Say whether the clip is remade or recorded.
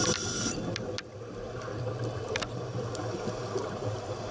recorded